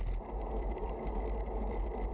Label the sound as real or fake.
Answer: real